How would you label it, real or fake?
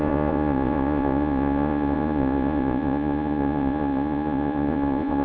fake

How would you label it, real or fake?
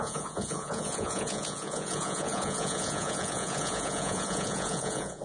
fake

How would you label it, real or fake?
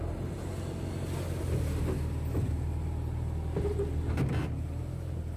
real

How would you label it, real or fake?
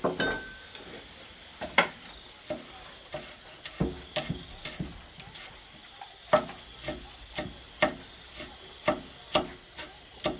real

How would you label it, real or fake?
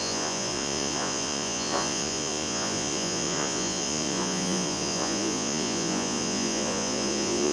fake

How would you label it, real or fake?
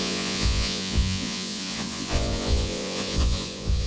fake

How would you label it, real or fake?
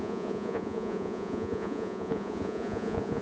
fake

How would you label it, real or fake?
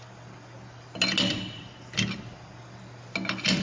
real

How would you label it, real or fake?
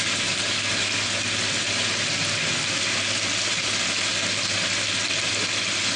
real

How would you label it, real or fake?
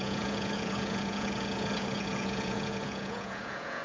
fake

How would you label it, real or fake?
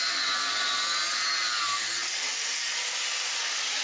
real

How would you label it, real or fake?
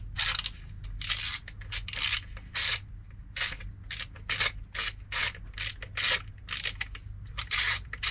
real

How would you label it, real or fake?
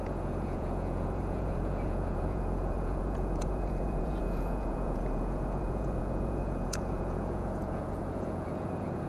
fake